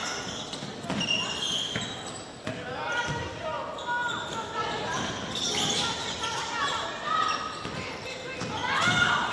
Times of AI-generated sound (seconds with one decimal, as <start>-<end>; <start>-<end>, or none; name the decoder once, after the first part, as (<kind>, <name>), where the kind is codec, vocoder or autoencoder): none